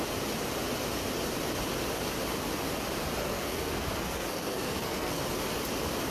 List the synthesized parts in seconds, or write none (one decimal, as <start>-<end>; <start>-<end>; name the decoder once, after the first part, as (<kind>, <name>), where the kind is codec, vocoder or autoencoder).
3.2-5.2 (codec, SNAC)